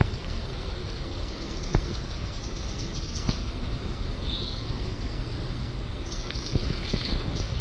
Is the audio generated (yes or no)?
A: yes